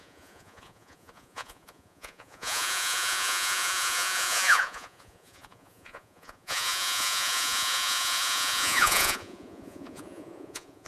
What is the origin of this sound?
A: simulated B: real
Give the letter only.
A